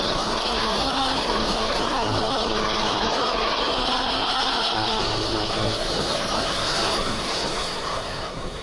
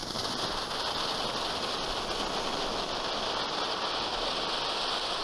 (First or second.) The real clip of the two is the second